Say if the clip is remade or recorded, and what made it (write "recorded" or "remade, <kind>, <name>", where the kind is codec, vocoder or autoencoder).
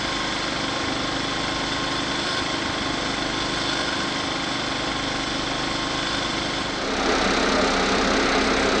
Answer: recorded